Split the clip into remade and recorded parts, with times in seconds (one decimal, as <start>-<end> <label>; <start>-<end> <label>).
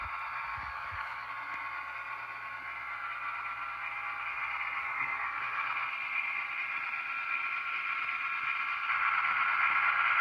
0.0-0.5 recorded; 0.5-1.3 remade; 1.3-4.8 recorded; 4.8-5.4 remade; 5.4-10.2 recorded